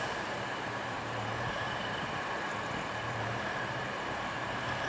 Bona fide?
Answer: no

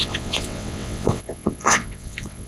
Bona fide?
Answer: no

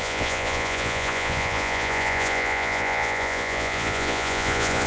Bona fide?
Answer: no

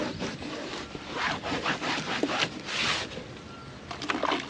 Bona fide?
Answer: yes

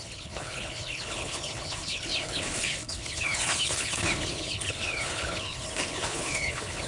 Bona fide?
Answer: no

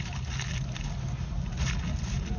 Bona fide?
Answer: yes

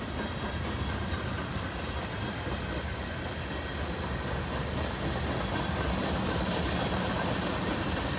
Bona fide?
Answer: yes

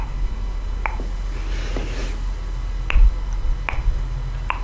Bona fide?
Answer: yes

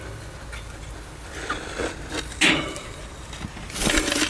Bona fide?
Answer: yes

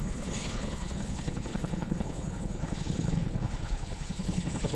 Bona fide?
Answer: no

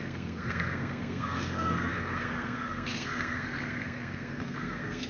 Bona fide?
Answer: no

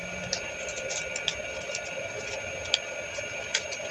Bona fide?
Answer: yes